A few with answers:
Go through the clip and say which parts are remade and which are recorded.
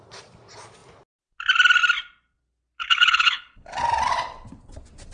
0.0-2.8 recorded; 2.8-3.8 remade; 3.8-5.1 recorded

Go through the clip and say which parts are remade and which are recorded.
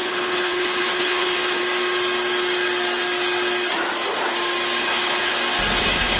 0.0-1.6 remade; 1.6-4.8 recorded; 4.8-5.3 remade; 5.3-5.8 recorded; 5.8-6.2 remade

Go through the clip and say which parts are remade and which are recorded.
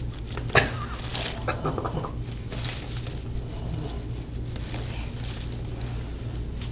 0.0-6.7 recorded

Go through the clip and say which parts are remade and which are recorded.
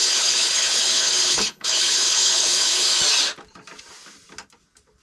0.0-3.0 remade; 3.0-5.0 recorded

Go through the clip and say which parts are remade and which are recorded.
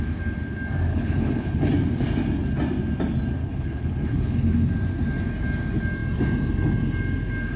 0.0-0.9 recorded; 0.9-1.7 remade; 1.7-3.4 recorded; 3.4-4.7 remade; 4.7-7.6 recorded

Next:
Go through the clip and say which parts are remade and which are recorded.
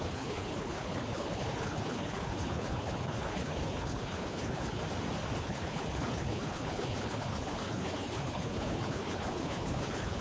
0.0-4.8 remade; 4.8-5.4 recorded; 5.4-10.2 remade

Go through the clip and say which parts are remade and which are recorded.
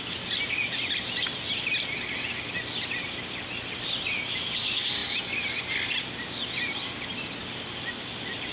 0.0-8.5 recorded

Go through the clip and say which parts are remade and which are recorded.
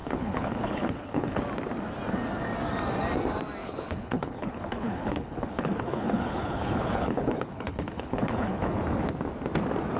0.0-1.4 remade; 1.4-3.6 recorded; 3.6-8.8 remade; 8.8-10.0 recorded